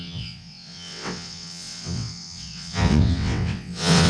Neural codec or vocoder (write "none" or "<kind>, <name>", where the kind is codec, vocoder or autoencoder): vocoder, WaveNeXt